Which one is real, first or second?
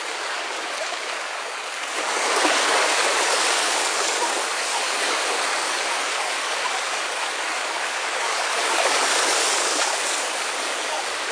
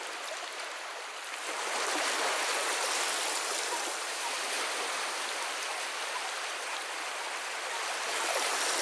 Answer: second